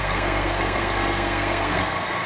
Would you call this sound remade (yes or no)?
yes